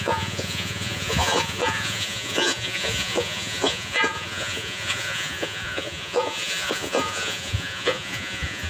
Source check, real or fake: fake